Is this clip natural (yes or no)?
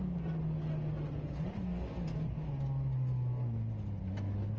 yes